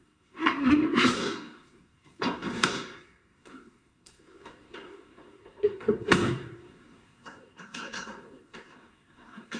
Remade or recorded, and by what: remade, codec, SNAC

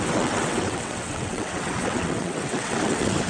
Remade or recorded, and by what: remade, vocoder, WaveNeXt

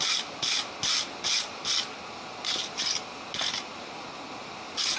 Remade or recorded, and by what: recorded